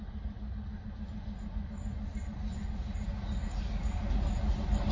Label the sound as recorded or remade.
recorded